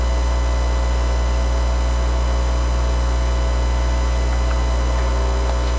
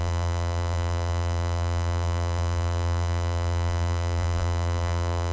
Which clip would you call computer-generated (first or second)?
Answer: second